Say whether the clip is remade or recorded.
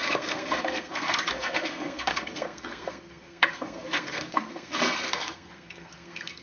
remade